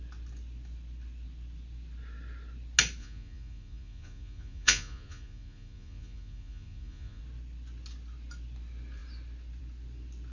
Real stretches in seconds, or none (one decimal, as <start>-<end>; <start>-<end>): 0.0-3.0; 7.2-10.3